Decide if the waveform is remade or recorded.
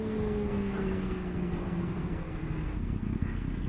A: remade